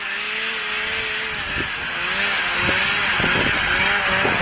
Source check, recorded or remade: recorded